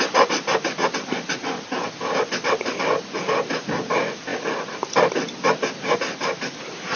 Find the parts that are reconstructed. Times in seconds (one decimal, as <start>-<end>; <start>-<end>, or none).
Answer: none